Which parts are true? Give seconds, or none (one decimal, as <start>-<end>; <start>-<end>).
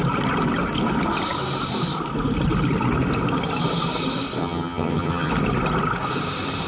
0.0-4.4; 5.3-6.7